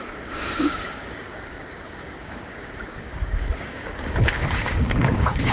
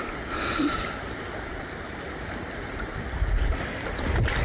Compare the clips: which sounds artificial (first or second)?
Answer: first